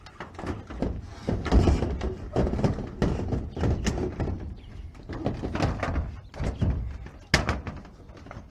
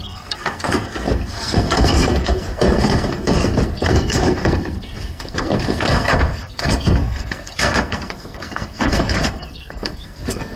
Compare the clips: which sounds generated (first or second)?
second